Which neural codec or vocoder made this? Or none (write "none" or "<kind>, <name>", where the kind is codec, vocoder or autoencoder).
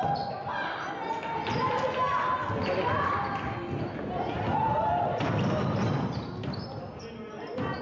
none